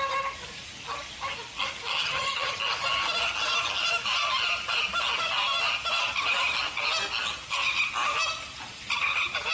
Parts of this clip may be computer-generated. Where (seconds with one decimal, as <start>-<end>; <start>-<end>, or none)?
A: 1.9-2.6